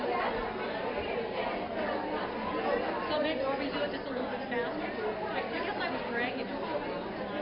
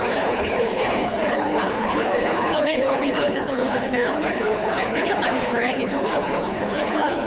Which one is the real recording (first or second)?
first